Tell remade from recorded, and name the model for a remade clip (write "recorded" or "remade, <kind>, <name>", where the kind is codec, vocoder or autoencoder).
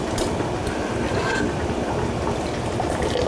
recorded